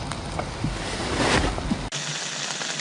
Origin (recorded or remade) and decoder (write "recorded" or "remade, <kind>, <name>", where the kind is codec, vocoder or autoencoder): recorded